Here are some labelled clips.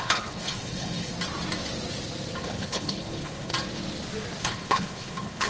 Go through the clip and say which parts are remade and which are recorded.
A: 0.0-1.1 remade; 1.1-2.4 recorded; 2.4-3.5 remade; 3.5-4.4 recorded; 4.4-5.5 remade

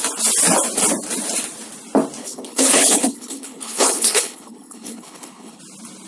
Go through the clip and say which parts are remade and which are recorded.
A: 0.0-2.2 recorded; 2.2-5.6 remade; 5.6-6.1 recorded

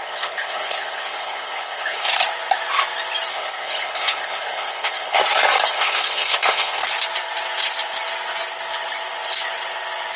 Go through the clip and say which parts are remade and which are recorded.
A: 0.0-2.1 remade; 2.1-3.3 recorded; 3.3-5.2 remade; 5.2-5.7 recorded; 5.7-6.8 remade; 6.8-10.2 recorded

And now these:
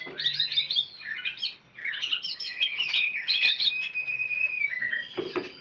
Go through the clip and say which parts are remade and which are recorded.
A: 0.0-1.8 recorded; 1.8-3.7 remade; 3.7-5.6 recorded